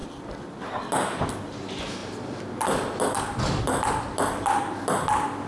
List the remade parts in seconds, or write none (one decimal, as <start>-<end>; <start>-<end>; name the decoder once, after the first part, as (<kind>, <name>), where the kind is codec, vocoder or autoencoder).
none